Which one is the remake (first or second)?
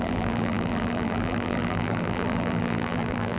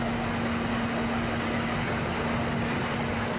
first